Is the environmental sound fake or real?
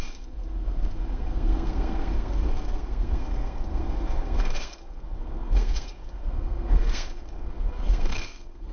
fake